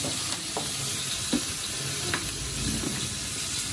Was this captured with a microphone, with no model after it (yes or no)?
yes